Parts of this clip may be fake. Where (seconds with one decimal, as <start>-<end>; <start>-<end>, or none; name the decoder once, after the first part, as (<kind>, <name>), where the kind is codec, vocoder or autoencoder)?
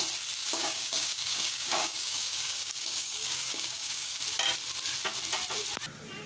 0.4-4.2 (codec, DAC)